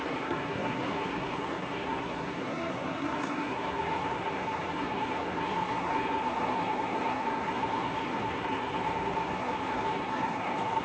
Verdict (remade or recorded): remade